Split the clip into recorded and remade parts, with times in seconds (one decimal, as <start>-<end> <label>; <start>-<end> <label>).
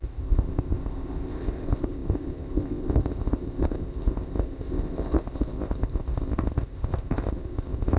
0.0-8.0 remade